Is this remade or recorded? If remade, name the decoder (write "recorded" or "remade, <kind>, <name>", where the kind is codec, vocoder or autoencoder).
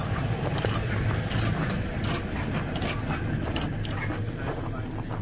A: recorded